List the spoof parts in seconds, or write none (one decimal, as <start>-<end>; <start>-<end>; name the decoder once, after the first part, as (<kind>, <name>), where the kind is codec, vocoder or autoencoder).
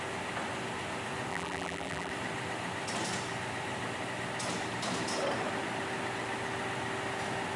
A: 1.3-2.1 (vocoder, BigVGAN v2)